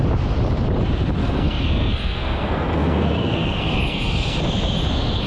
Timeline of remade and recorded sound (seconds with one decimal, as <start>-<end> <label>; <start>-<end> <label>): 0.0-1.2 recorded; 1.2-4.4 remade; 4.4-5.3 recorded